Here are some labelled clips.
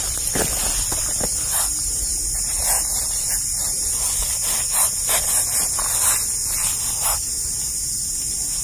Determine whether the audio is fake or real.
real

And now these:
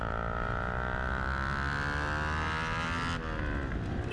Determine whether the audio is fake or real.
real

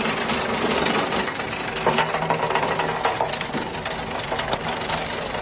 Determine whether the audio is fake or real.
fake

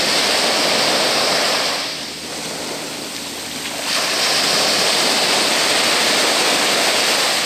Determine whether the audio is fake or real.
real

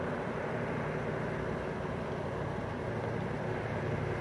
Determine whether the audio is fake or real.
real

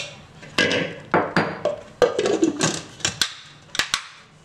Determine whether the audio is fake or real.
real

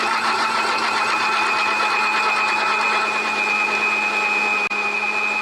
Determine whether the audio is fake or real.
real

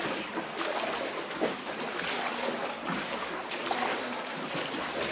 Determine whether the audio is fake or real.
real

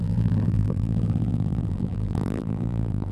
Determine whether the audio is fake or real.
fake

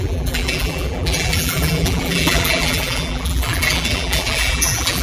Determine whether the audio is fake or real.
fake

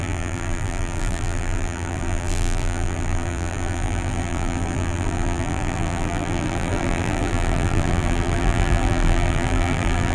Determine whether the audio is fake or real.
fake